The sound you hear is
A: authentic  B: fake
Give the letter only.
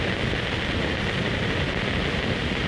A